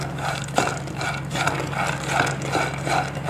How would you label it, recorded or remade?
recorded